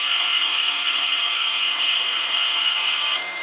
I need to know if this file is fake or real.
fake